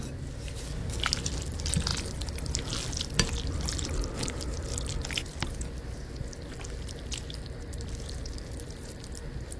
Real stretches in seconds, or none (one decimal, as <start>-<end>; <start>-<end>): 0.0-1.9; 2.6-9.6